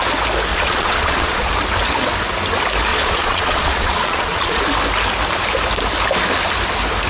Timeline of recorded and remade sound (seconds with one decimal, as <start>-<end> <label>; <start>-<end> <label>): 0.0-0.5 recorded; 0.5-1.5 remade; 1.5-2.9 recorded; 2.9-4.6 remade; 4.6-7.1 recorded